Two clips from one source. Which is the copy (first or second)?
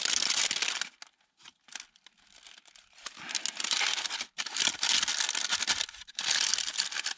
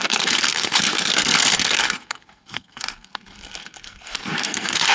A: second